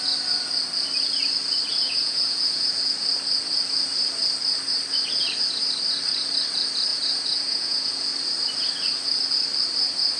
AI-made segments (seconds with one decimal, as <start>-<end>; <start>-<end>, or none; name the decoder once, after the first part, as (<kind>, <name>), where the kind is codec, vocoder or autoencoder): 1.7-2.8 (vocoder, Vocos); 6.9-7.9